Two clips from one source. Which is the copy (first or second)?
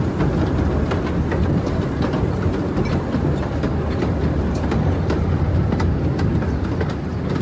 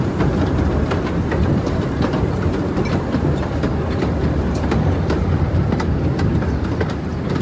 second